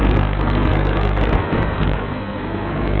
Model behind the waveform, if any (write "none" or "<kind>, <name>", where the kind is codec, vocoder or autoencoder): codec, SNAC